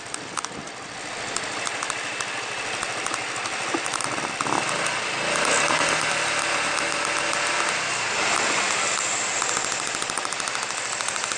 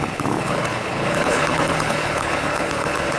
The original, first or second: first